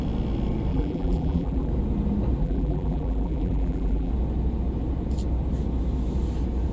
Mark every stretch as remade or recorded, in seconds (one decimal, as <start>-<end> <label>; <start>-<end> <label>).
0.0-0.7 recorded; 0.7-1.7 remade; 1.7-2.4 recorded; 2.4-4.1 remade; 4.1-6.7 recorded